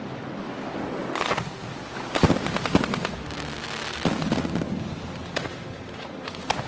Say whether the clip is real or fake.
real